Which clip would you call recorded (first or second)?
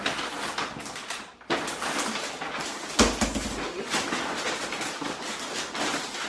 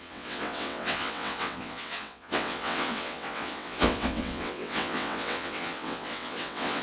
first